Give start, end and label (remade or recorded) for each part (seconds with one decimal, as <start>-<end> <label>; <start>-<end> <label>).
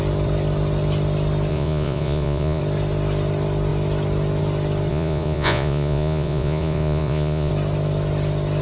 0.0-1.5 recorded; 1.5-2.6 remade; 2.6-4.9 recorded; 4.9-7.5 remade; 7.5-8.6 recorded